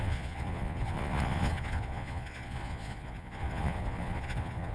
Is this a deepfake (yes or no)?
yes